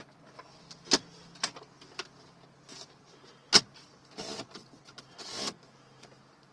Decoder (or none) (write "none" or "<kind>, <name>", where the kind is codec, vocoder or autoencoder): none